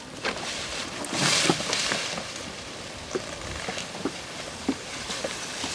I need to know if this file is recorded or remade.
recorded